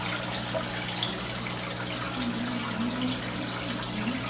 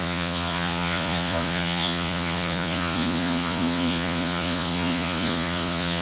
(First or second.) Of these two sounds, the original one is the first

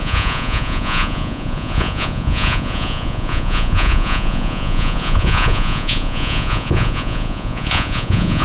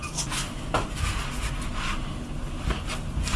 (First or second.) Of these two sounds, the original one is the second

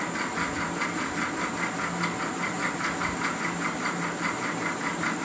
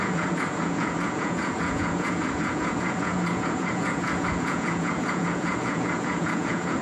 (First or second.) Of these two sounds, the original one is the first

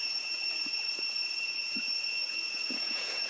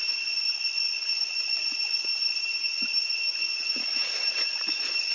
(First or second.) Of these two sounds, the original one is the second